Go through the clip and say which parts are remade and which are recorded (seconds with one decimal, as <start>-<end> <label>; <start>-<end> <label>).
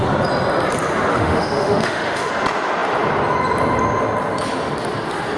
0.0-1.1 recorded; 1.1-2.3 remade; 2.3-5.4 recorded